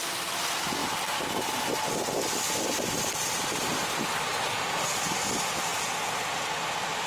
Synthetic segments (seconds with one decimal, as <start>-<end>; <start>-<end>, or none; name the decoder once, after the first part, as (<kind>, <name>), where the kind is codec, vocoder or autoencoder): none